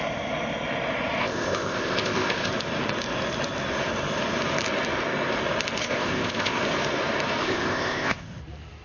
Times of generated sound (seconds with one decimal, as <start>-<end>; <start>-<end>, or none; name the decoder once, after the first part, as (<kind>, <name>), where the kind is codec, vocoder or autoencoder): 1.2-2.5 (codec, ZipCodec); 5.8-6.6; 7.4-8.4